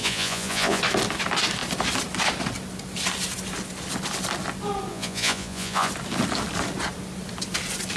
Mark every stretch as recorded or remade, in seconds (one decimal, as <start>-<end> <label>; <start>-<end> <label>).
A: 0.0-0.8 remade; 0.8-4.9 recorded; 4.9-5.9 remade; 5.9-8.0 recorded

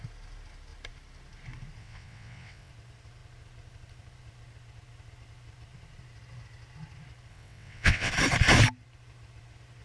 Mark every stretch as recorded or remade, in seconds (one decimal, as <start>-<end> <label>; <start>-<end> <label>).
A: 0.0-1.8 recorded; 1.8-2.7 remade; 2.7-7.3 recorded; 7.3-8.1 remade; 8.1-9.8 recorded

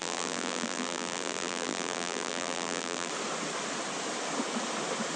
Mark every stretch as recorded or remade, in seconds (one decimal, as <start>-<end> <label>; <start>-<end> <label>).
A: 0.0-3.1 remade; 3.1-5.2 recorded

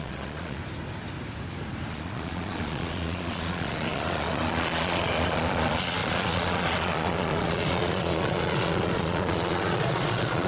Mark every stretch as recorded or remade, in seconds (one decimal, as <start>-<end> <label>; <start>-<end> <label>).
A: 0.0-0.6 remade; 0.6-1.9 recorded; 1.9-10.5 remade

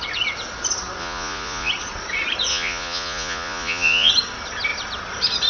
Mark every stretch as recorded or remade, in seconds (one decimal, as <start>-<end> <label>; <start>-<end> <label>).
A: 0.0-1.0 recorded; 1.0-1.7 remade; 1.7-2.5 recorded; 2.5-4.1 remade; 4.1-5.5 recorded

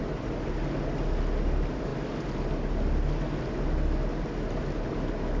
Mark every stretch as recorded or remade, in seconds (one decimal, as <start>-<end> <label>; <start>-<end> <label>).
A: 0.0-5.4 recorded

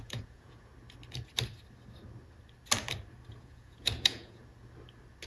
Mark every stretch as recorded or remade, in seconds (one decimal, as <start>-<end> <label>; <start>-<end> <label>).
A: 0.0-0.7 remade; 0.7-3.3 recorded; 3.3-4.4 remade; 4.4-5.3 recorded

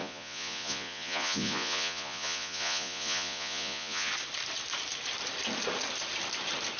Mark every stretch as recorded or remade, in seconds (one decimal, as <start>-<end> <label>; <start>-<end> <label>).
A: 0.0-4.1 remade; 4.1-6.8 recorded